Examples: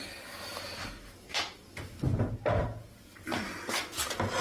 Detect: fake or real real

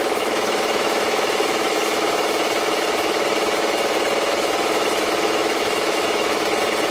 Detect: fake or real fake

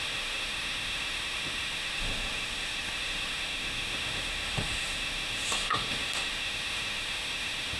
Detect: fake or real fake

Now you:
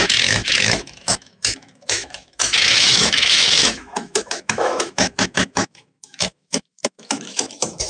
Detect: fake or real fake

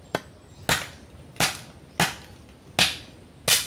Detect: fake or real real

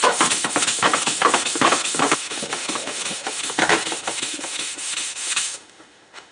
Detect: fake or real fake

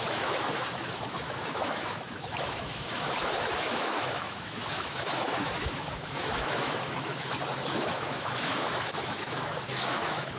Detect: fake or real fake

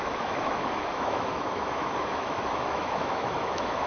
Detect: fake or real fake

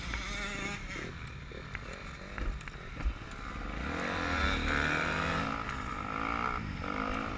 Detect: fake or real real